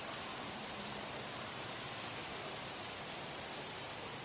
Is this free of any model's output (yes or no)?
no